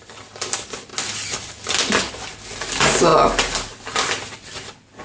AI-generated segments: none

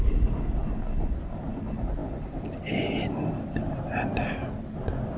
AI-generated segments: none

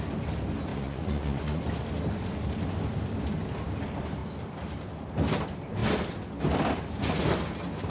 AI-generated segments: 0.7-1.6 (vocoder, Vocos)